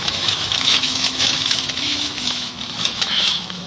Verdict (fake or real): fake